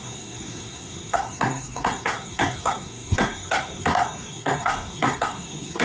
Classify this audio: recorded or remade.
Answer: remade